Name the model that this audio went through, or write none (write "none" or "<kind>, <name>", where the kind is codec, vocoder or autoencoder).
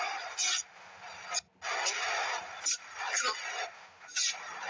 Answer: none